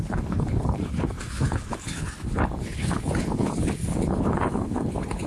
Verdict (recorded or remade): remade